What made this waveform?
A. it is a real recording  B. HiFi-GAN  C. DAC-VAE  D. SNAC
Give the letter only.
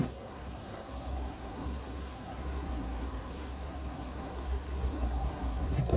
D